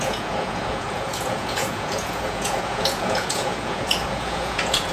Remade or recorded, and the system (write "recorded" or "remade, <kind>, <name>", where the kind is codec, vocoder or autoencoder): remade, vocoder, Vocos